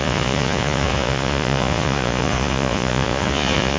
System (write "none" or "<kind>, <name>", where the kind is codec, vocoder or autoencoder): vocoder, Vocos